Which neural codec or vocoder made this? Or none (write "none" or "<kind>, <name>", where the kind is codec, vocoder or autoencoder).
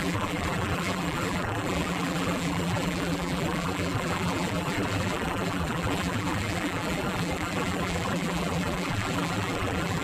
vocoder, BigVGAN v2